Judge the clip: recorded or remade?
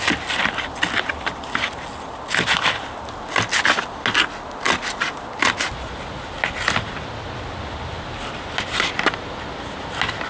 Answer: recorded